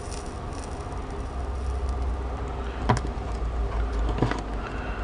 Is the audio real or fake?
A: real